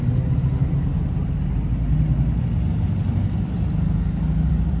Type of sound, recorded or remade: recorded